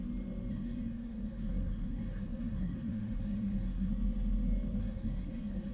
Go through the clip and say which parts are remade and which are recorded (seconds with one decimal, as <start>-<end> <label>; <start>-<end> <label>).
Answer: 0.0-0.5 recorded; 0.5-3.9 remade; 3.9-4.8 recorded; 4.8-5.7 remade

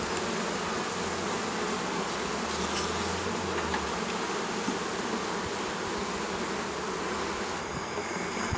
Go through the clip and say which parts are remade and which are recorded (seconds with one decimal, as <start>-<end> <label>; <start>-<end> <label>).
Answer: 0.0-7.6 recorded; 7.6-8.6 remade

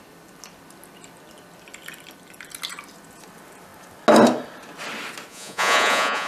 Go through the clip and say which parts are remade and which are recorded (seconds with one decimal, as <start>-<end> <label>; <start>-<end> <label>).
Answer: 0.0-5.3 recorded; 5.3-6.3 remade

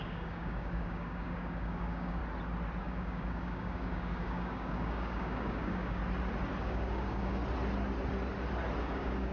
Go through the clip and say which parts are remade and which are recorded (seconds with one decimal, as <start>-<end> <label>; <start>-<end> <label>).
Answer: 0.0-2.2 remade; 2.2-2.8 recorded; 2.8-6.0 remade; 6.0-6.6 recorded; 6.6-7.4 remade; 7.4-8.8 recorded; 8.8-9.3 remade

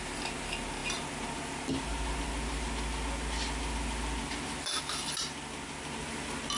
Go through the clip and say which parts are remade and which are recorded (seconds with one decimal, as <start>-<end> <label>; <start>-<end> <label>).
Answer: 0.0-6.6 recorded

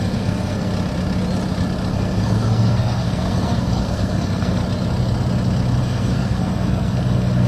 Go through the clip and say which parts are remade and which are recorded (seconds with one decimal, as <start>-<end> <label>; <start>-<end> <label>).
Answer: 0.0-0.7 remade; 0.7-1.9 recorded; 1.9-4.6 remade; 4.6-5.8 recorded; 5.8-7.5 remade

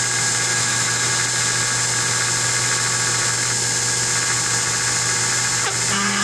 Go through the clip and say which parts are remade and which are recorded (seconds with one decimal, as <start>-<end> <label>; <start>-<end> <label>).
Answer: 0.0-0.5 recorded; 0.5-1.1 remade; 1.1-6.2 recorded